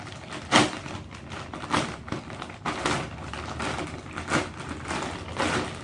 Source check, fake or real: fake